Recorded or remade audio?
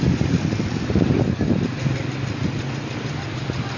recorded